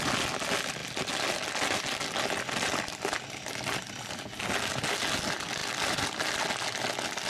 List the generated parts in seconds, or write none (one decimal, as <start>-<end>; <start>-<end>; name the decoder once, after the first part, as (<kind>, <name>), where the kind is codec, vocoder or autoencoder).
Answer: none